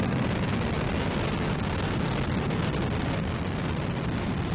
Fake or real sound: real